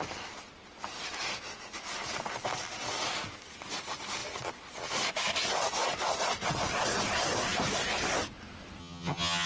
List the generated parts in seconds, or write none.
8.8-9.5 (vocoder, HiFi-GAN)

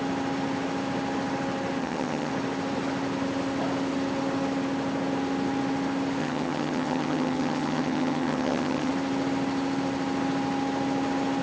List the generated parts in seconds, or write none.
1.8-2.3 (vocoder, HiFi-GAN); 6.2-8.9

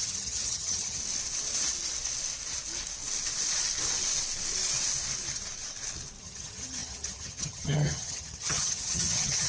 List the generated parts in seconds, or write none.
0.0-1.0 (vocoder, HiFi-GAN); 6.2-9.5

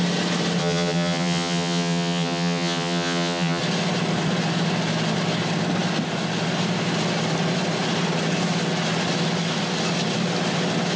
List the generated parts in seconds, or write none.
0.6-3.6 (vocoder, HiFi-GAN)

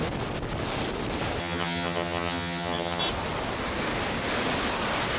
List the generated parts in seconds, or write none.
1.4-3.0 (vocoder, HiFi-GAN)